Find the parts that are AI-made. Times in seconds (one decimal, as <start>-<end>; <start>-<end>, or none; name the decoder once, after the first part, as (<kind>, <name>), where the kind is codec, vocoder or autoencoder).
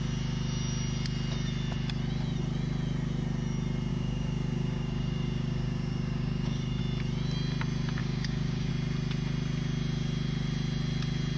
3.9-6.8 (codec, DAC); 8.0-8.7